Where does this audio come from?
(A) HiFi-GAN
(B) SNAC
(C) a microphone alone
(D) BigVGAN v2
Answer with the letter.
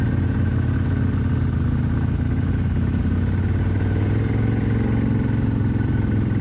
C